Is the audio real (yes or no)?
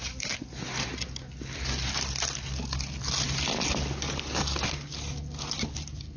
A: yes